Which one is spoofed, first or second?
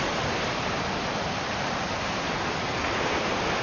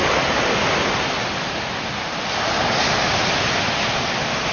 first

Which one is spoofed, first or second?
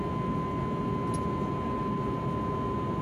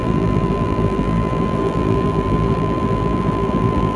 second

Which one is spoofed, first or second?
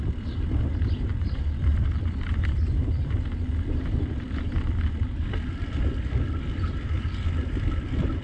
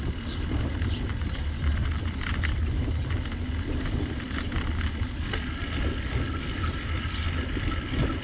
first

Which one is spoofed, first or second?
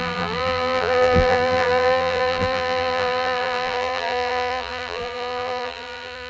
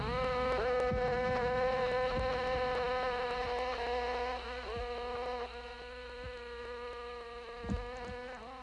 first